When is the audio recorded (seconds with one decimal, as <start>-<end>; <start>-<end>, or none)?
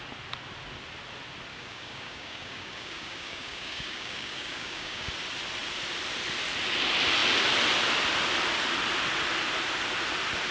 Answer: 0.0-1.5; 5.1-10.5